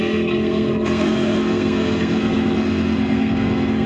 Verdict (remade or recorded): remade